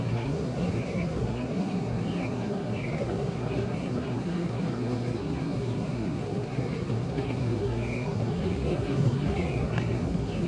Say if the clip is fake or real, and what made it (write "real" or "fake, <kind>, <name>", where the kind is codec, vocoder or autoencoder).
fake, codec, SNAC